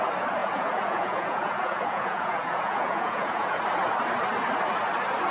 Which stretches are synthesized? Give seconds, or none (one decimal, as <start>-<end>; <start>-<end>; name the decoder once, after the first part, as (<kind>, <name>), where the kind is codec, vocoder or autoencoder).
0.4-3.6 (vocoder, Vocos)